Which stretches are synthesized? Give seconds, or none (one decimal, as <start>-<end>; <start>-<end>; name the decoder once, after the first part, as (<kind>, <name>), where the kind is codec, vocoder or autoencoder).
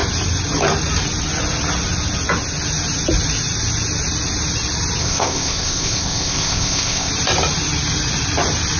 5.0-7.1 (codec, ZipCodec)